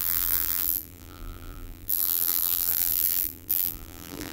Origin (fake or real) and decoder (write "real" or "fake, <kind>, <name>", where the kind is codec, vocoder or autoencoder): fake, vocoder, BigVGAN v2